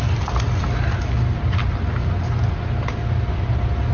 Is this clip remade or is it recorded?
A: recorded